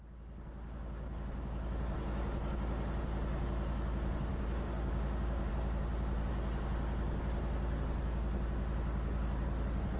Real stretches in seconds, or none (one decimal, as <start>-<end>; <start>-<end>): 0.0-4.3; 5.5-10.0